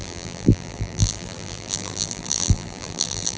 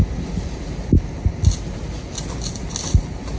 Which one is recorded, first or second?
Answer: second